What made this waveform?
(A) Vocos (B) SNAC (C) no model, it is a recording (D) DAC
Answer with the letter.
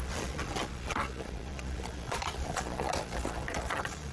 A